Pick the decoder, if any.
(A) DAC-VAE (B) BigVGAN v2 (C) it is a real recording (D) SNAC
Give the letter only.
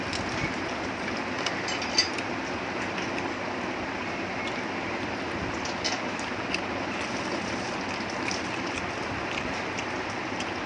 C